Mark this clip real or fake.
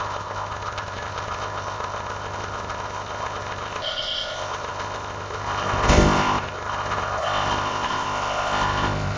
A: fake